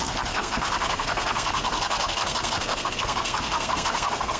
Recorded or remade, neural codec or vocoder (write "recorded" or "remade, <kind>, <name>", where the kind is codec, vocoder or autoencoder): remade, codec, SNAC